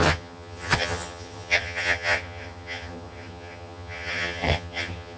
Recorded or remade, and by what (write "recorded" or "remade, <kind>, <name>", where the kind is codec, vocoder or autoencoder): remade, vocoder, HiFi-GAN